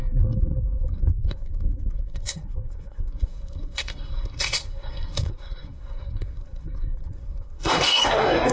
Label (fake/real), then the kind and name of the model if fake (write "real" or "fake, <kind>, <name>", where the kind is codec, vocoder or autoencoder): fake, codec, SNAC